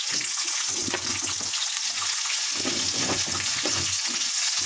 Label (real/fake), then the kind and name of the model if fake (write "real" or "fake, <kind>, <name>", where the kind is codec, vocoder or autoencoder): fake, vocoder, Vocos